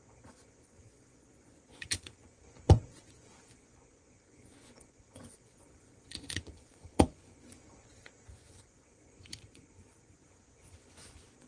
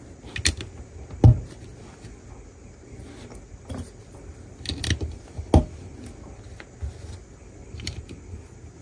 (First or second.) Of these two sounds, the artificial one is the first